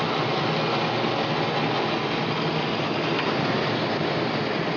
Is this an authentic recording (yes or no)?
yes